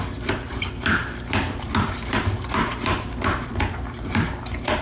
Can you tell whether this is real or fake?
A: fake